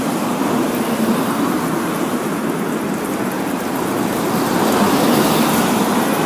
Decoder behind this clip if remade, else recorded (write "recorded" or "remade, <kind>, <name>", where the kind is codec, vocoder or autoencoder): recorded